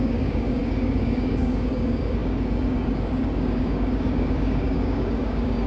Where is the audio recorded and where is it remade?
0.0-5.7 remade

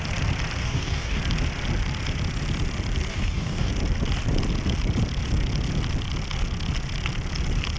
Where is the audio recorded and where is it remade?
0.0-0.6 recorded; 0.6-1.2 remade; 1.2-3.1 recorded; 3.1-3.7 remade; 3.7-7.8 recorded

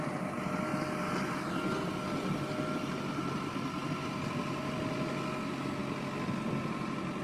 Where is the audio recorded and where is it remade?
0.0-7.2 recorded

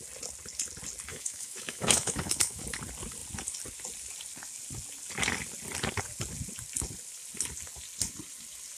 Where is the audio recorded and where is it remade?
0.0-1.1 recorded; 1.1-2.6 remade; 2.6-8.8 recorded

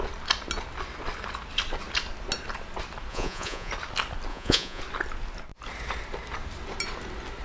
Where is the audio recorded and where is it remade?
0.0-3.1 recorded; 3.1-3.7 remade; 3.7-4.3 recorded; 4.3-4.8 remade; 4.8-7.4 recorded

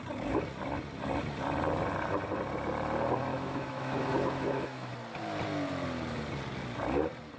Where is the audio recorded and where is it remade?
0.0-3.3 recorded; 3.3-4.9 remade; 4.9-7.4 recorded

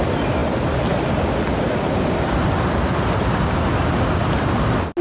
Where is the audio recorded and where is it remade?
0.0-5.0 recorded